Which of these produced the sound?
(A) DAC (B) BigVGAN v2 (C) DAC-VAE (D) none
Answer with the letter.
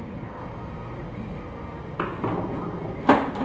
D